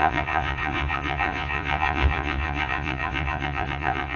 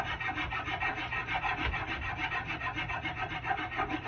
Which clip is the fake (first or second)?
first